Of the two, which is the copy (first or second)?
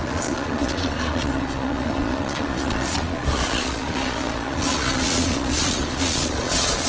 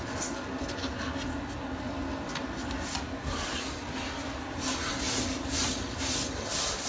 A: first